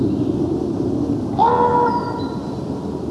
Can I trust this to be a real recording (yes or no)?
yes